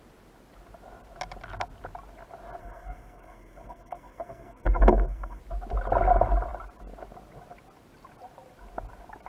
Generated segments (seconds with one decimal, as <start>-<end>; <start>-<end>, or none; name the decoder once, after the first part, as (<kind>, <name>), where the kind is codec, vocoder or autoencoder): 2.6-5.4 (codec, SNAC)